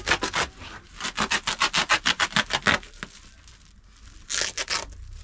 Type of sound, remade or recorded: recorded